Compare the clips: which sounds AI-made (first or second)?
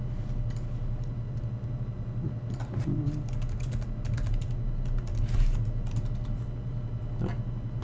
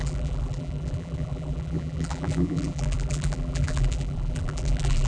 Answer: second